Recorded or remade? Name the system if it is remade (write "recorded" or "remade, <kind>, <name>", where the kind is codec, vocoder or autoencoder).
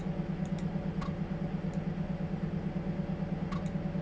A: recorded